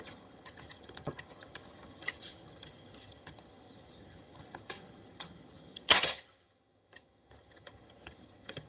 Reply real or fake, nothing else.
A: fake